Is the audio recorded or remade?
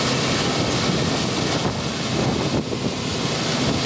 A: recorded